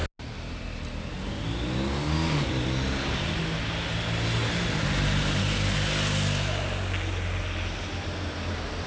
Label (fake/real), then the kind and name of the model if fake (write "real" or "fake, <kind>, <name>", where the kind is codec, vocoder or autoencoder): real